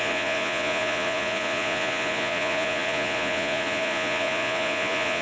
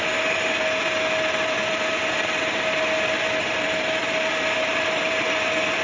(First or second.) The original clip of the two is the second